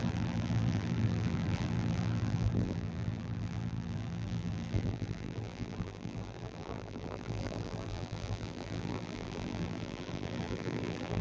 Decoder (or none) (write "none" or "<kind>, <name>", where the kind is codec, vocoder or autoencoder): vocoder, BigVGAN v2